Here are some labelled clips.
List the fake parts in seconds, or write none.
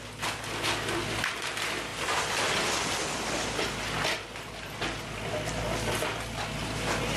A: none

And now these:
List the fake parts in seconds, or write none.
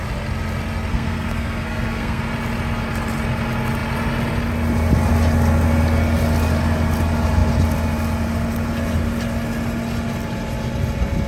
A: 0.9-2.2 (codec, SNAC)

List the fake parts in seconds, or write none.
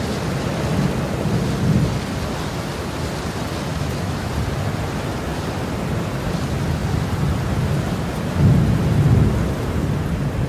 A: 3.7-4.3 (autoencoder, DAC-VAE)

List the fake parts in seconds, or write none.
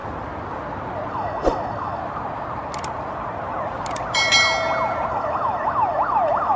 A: 1.1-2.0 (autoencoder, DAC-VAE); 5.1-6.6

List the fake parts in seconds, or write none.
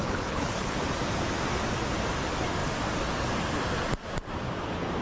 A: 0.0-0.8 (codec, HILCodec)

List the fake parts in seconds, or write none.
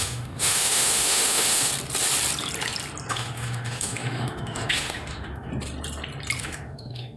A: 0.0-1.7 (autoencoder, DAC-VAE); 3.1-5.5; 6.4-7.2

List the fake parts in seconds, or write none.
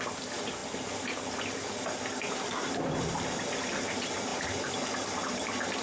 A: 0.6-3.4 (vocoder, BigVGAN v2); 4.3-4.9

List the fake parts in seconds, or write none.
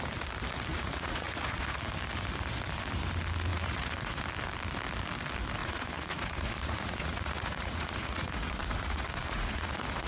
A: 0.7-1.8 (vocoder, Vocos); 3.5-4.2; 5.6-10.1